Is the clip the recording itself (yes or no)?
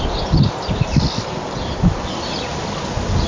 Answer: yes